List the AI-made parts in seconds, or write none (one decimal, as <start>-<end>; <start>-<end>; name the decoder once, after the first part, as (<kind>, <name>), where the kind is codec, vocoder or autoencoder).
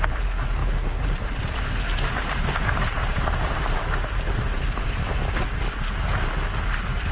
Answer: 0.6-4.9 (vocoder, BigVGAN v2)